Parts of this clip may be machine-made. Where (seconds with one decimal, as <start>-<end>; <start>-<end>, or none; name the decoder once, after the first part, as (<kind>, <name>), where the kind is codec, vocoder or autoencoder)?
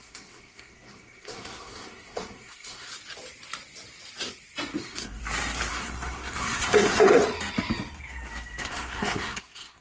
0.0-2.9 (codec, SNAC); 4.8-5.2; 5.7-7.2; 8.6-9.8